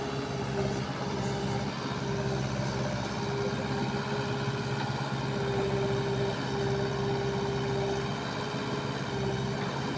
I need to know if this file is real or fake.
real